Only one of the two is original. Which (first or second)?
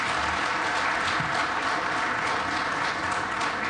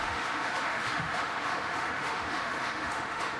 first